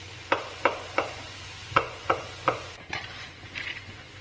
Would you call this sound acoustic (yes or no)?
no